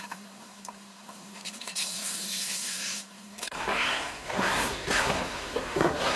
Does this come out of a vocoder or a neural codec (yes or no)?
yes